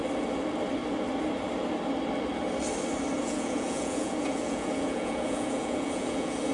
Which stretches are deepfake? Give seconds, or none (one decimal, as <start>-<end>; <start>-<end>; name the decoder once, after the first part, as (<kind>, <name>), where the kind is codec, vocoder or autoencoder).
3.2-6.5 (vocoder, Vocos)

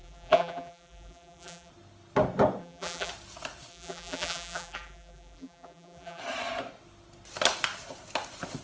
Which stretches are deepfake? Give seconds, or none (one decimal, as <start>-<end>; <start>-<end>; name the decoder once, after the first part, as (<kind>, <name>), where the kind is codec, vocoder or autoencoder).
0.0-1.7 (vocoder, BigVGAN v2); 2.6-3.1; 3.7-6.2

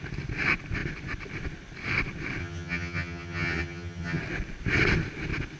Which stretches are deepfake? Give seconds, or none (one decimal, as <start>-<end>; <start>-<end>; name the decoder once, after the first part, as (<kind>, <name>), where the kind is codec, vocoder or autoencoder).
2.4-4.2 (vocoder, HiFi-GAN)

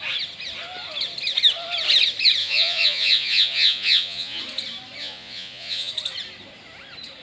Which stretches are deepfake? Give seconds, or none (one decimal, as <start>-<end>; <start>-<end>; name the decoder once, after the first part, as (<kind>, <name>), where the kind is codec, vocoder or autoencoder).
2.4-4.4 (vocoder, Vocos); 5.0-5.9

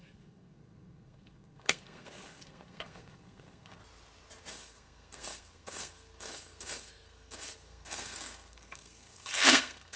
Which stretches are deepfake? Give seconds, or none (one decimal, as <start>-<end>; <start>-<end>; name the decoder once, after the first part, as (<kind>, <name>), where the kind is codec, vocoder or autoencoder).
0.0-3.8 (codec, SNAC); 4.5-10.0